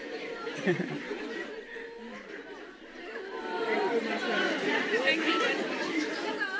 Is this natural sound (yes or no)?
no